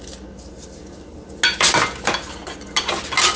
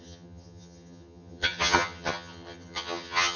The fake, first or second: second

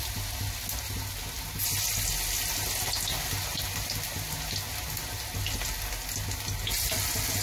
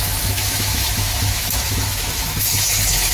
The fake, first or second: second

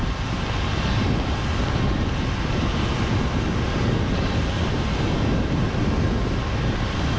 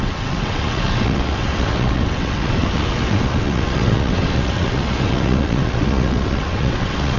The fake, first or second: second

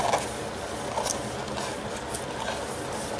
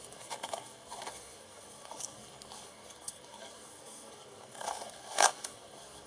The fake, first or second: second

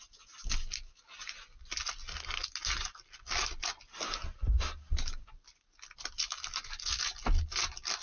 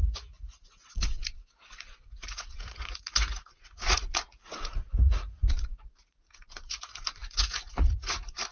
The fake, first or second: second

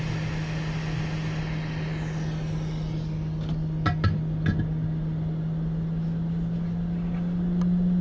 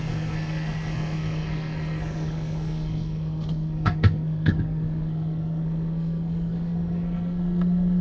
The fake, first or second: second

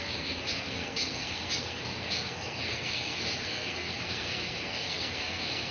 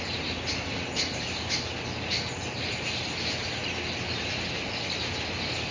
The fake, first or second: first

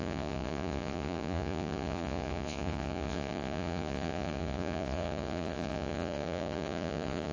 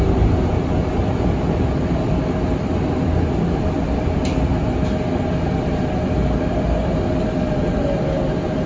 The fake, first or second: first